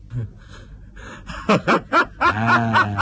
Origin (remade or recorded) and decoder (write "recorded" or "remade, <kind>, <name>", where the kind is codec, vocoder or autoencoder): recorded